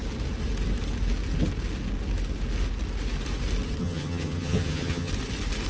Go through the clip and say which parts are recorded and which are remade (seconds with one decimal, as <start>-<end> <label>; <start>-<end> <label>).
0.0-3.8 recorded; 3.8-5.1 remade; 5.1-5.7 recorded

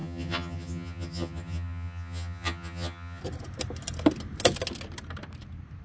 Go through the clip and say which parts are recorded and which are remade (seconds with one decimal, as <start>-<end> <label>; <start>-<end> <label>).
0.0-3.2 remade; 3.2-5.8 recorded

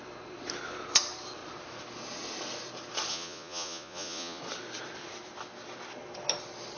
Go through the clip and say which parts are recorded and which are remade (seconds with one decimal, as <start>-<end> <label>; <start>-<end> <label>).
0.0-3.1 recorded; 3.1-4.4 remade; 4.4-6.8 recorded

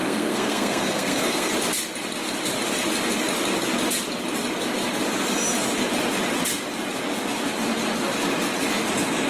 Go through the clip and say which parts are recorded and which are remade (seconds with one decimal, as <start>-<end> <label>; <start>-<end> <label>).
0.0-1.5 remade; 1.5-9.3 recorded

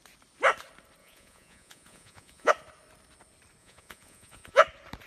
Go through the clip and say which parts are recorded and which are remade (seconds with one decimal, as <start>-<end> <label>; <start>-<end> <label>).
0.0-1.0 recorded; 1.0-2.5 remade; 2.5-3.6 recorded; 3.6-4.6 remade; 4.6-5.1 recorded

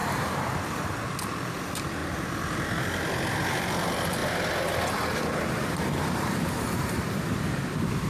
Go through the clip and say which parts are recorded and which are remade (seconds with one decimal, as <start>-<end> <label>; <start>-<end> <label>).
0.0-1.0 remade; 1.0-8.1 recorded

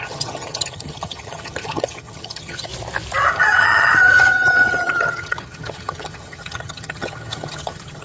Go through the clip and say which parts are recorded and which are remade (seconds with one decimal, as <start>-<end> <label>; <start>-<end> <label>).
0.0-2.7 remade; 2.7-3.3 recorded; 3.3-8.0 remade